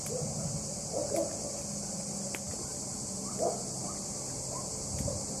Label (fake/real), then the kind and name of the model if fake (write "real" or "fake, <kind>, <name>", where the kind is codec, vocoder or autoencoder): real